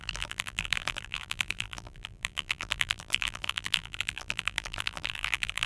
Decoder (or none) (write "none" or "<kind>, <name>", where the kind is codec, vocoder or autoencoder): vocoder, BigVGAN v2